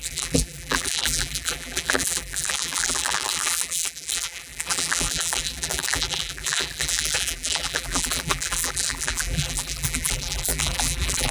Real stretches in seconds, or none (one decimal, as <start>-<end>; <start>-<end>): none